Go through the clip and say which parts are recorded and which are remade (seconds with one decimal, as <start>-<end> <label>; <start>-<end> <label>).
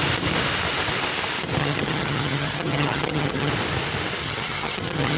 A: 0.0-1.6 recorded; 1.6-3.5 remade; 3.5-4.2 recorded; 4.2-5.2 remade